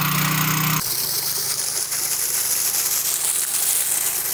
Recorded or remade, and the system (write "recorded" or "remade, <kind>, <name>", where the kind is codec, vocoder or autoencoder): recorded